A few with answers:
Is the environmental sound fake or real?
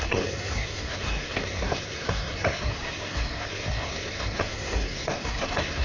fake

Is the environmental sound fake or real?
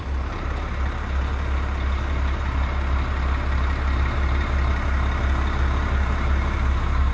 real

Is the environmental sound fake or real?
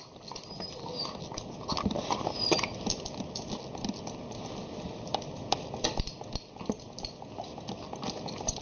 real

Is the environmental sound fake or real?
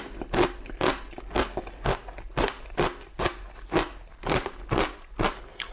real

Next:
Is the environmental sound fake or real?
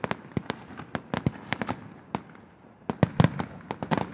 real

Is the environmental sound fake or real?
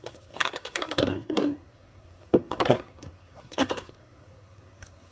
fake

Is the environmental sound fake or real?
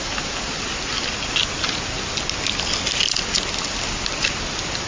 real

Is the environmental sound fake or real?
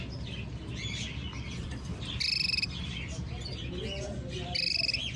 real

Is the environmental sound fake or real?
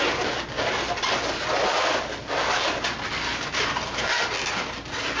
real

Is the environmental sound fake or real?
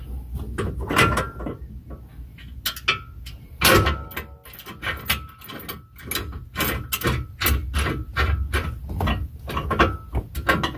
real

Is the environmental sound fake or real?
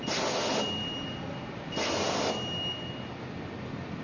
real